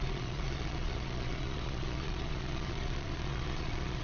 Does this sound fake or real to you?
fake